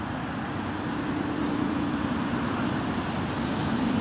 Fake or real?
real